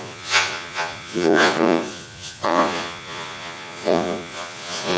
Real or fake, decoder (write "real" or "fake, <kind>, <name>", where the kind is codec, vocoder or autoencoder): fake, vocoder, Vocos